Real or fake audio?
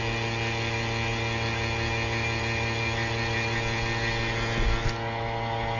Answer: real